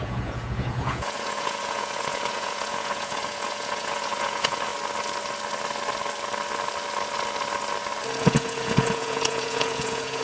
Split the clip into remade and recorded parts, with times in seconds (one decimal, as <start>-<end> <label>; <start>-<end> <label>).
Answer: 0.0-4.7 remade; 4.7-8.2 recorded; 8.2-10.2 remade